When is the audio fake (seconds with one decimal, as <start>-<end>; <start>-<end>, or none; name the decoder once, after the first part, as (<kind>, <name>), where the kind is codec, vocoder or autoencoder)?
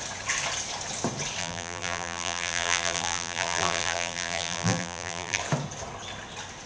1.4-5.4 (vocoder, BigVGAN v2)